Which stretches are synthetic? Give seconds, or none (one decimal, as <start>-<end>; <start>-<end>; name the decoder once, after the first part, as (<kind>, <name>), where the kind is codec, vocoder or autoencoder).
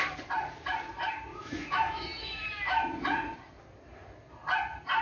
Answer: 1.3-2.9 (autoencoder, DAC-VAE)